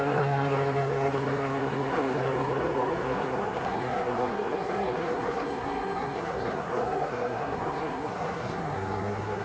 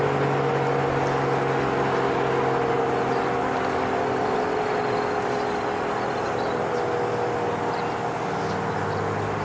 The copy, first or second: first